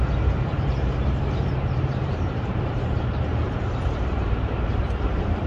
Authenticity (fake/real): fake